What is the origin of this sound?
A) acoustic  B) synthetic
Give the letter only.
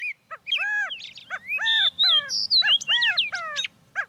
A